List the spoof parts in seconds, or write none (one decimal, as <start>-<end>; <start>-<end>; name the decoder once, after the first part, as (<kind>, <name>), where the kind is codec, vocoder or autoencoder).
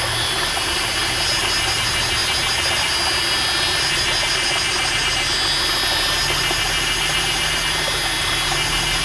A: none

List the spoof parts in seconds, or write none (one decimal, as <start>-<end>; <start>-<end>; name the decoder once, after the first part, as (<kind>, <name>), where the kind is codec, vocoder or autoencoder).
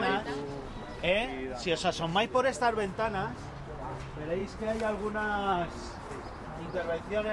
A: none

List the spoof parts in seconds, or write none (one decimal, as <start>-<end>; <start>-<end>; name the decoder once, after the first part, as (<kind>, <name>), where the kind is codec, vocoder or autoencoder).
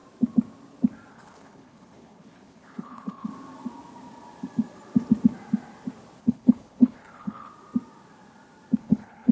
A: 1.1-3.3 (codec, HILCodec); 6.2-7.5; 8.8-9.3